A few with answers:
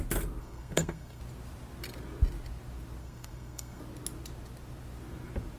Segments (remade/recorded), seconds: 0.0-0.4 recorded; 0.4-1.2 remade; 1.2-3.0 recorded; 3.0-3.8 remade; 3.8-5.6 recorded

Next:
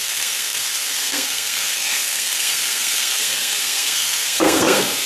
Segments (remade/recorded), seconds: 0.0-5.1 remade